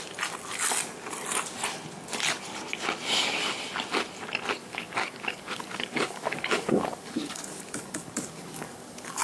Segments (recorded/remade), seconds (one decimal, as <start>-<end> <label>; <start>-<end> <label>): 0.0-4.6 recorded; 4.6-9.2 remade